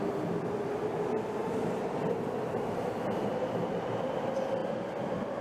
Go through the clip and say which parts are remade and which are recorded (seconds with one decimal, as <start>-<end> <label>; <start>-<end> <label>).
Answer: 0.0-1.4 recorded; 1.4-2.8 remade; 2.8-4.6 recorded; 4.6-5.4 remade